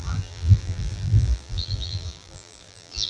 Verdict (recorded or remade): remade